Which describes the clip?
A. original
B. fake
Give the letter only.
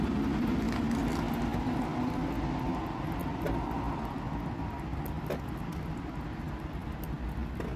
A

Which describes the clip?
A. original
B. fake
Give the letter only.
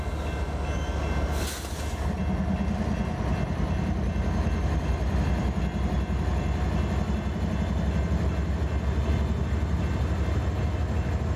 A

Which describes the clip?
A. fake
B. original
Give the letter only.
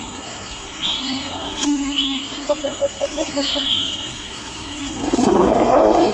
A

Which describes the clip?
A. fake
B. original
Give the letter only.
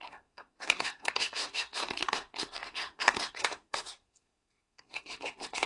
A